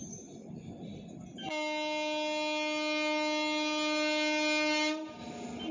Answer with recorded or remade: recorded